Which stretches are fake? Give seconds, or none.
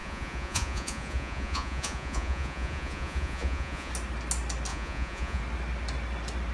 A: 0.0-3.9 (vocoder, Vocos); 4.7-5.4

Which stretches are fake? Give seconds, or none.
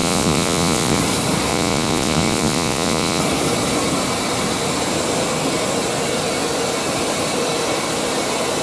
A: 0.0-1.0 (vocoder, Vocos); 1.5-3.2